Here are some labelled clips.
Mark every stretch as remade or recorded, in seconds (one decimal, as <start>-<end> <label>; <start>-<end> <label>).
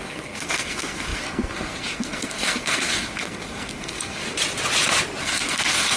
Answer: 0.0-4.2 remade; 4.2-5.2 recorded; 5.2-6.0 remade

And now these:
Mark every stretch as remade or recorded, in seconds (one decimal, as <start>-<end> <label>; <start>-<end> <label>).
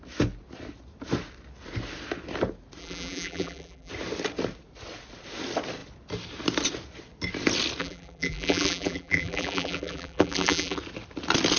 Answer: 0.0-2.8 recorded; 2.8-3.9 remade; 3.9-7.8 recorded; 7.8-10.8 remade; 10.8-11.6 recorded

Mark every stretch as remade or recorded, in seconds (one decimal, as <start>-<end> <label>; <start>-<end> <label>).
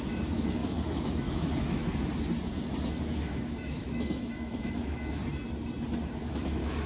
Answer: 0.0-1.8 remade; 1.8-3.0 recorded; 3.0-5.2 remade; 5.2-6.1 recorded; 6.1-6.9 remade